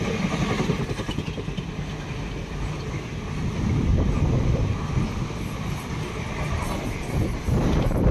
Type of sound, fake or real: real